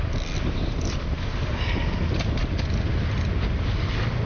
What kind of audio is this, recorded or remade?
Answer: recorded